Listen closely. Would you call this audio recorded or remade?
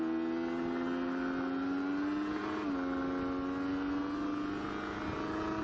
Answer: recorded